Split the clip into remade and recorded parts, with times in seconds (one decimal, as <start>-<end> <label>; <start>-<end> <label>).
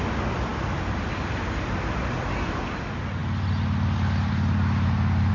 0.0-5.3 recorded